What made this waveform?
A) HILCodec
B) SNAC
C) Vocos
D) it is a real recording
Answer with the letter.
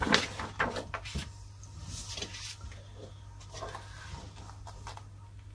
D